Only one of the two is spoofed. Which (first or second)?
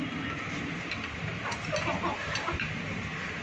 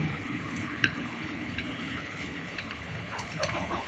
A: second